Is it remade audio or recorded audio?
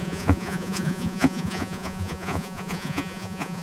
remade